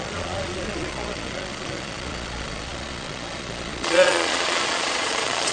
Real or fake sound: fake